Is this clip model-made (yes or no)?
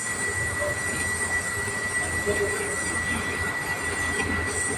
no